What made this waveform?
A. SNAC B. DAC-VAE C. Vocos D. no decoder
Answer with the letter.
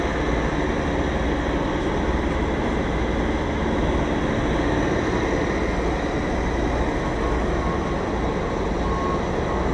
D